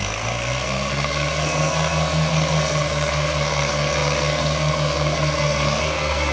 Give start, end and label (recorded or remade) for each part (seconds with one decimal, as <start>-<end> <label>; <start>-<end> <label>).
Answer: 0.0-6.3 remade